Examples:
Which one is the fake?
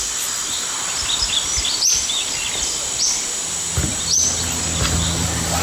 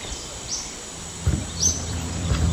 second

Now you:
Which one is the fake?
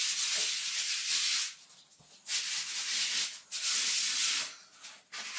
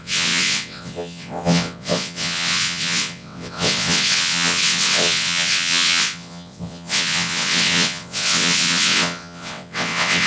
second